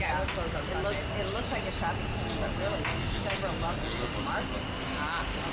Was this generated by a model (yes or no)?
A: no